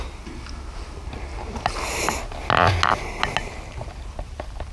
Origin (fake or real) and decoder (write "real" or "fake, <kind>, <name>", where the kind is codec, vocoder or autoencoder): real